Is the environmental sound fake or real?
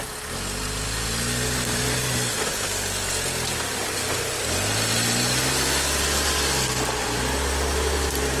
real